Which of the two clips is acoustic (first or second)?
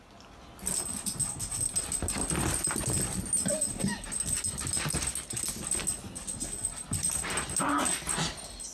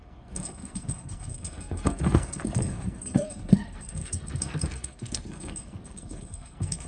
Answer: first